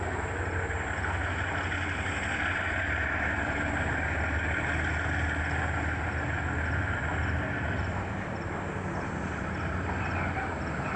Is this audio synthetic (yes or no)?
no